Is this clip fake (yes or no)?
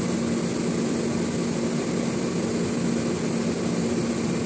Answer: no